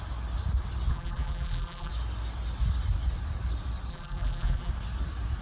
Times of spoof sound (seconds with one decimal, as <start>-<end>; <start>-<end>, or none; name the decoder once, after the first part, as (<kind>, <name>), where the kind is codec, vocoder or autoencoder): 0.9-1.9 (vocoder, BigVGAN v2); 3.9-4.7